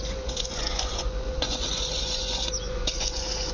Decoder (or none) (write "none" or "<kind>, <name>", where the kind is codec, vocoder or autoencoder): vocoder, Vocos